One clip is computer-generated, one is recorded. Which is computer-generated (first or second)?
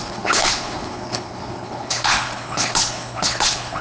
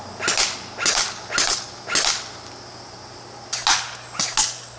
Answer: first